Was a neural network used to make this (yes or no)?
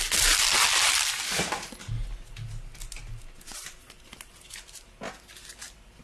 no